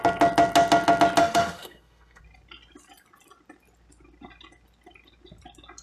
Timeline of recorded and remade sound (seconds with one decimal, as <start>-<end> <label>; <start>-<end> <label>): 0.0-1.2 recorded; 1.2-2.2 remade; 2.2-5.8 recorded